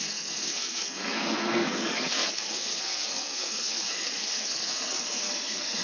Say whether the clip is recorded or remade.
remade